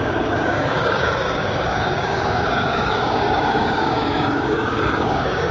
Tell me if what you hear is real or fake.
fake